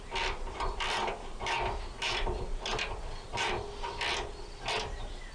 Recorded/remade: recorded